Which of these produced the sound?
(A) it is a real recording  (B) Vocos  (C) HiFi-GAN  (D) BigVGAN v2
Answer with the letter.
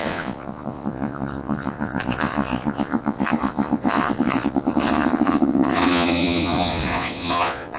B